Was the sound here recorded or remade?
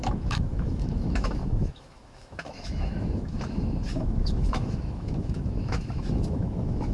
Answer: remade